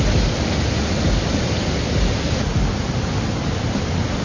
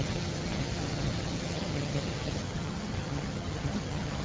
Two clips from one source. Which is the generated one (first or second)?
second